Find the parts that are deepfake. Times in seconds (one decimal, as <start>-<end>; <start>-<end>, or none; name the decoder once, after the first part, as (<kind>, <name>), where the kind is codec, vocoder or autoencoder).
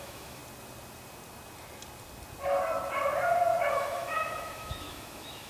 0.0-0.4 (autoencoder, DAC-VAE); 3.7-5.5